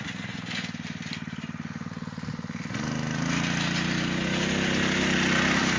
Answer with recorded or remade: recorded